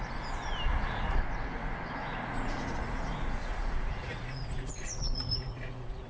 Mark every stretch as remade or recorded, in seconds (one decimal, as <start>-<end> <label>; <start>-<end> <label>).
0.0-0.7 recorded; 0.7-1.2 remade; 1.2-2.0 recorded; 2.0-6.1 remade